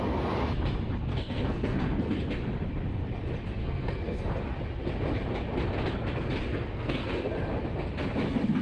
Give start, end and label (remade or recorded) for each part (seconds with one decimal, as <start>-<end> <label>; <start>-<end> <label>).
0.0-1.1 recorded; 1.1-2.1 remade; 2.1-3.6 recorded; 3.6-4.2 remade; 4.2-6.5 recorded; 6.5-7.1 remade; 7.1-8.6 recorded